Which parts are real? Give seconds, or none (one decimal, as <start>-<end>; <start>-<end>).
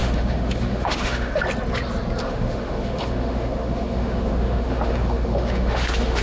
1.4-2.2